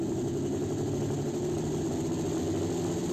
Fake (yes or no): no